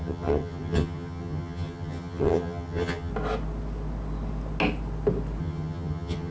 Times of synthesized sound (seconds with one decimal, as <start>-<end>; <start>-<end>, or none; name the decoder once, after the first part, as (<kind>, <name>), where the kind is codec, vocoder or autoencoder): 0.0-3.1 (vocoder, HiFi-GAN); 5.4-6.3